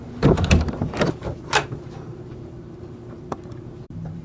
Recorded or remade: remade